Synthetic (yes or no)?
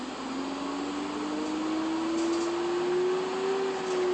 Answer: no